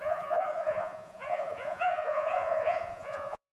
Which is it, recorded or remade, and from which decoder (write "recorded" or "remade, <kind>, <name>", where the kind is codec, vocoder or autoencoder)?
remade, vocoder, Vocos